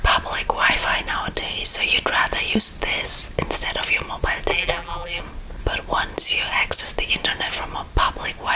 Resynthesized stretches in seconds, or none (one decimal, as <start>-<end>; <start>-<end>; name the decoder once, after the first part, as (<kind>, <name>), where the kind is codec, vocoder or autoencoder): 4.5-5.2 (vocoder, BigVGAN v2)